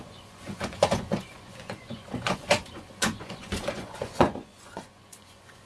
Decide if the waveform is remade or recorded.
remade